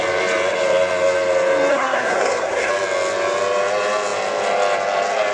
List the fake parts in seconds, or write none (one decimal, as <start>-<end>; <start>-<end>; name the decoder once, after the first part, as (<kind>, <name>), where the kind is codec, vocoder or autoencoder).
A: 1.7-2.7 (codec, SNAC)